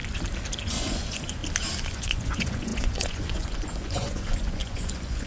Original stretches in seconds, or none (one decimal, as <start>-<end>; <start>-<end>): 0.0-0.6; 1.4-1.9